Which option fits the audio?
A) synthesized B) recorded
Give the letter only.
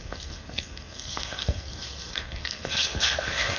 A